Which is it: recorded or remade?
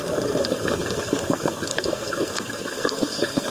remade